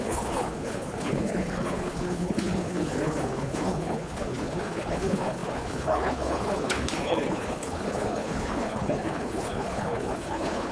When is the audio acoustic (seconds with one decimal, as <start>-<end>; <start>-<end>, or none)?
none